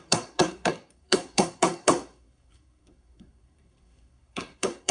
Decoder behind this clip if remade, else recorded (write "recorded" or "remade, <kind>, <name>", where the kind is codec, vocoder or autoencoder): remade, codec, SNAC